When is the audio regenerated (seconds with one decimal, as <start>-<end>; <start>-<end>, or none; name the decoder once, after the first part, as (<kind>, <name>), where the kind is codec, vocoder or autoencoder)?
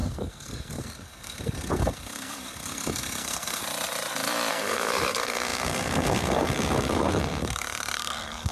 0.0-3.6 (codec, SNAC); 4.5-8.5